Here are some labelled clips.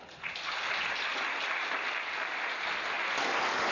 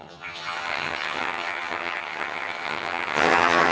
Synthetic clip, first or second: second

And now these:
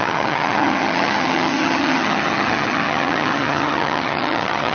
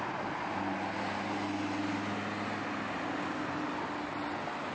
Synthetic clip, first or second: first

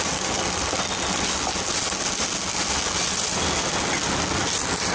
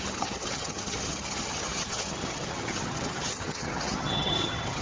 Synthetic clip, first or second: second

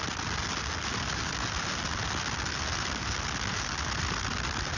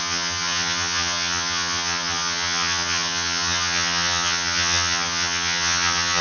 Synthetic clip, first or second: second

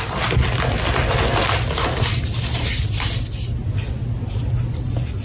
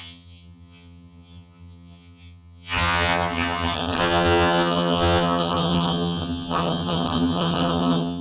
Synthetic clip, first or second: second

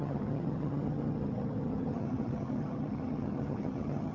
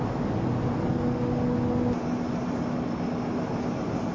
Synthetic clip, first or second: first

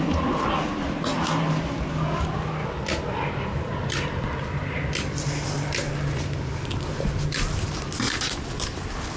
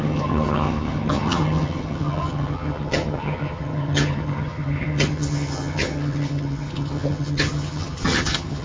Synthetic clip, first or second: second